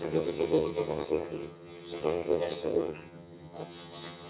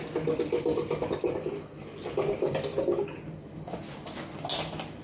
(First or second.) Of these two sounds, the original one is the second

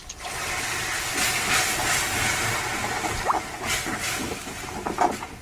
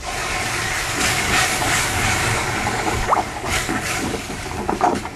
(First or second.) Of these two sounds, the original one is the first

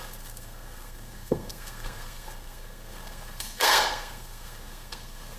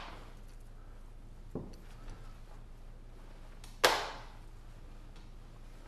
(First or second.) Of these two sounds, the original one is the second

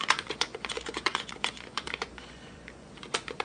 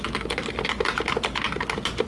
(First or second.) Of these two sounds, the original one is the second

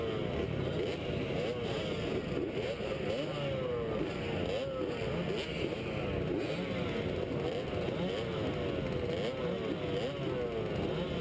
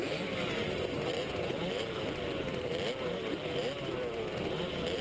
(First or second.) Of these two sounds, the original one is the first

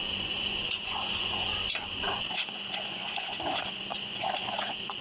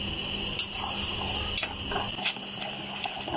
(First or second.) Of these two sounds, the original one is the second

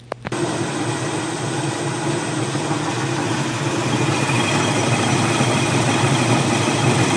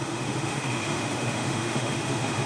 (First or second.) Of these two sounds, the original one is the first